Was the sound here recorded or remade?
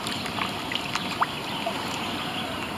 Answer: recorded